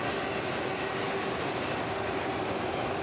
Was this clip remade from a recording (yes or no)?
no